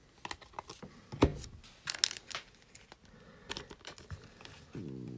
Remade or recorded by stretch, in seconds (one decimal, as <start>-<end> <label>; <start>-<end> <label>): 0.0-5.2 recorded